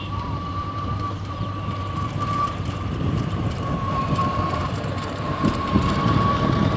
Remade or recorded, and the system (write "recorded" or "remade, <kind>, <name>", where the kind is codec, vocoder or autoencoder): remade, vocoder, BigVGAN v2